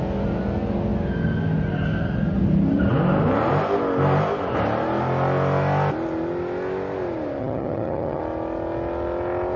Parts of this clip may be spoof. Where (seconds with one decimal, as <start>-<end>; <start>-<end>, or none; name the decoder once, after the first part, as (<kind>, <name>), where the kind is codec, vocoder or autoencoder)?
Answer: 7.4-8.2 (vocoder, HiFi-GAN)